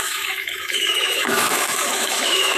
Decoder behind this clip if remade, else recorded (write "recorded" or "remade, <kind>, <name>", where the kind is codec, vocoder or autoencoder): remade, autoencoder, DAC-VAE